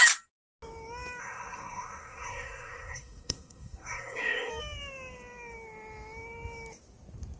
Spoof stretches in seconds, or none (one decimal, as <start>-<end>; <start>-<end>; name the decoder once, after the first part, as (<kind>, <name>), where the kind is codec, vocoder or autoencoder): 1.2-4.5 (codec, SNAC)